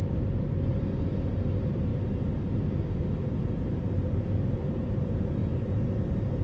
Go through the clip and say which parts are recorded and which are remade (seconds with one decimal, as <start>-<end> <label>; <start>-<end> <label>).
0.0-0.7 remade; 0.7-1.3 recorded; 1.3-1.9 remade; 1.9-3.3 recorded; 3.3-5.4 remade; 5.4-6.4 recorded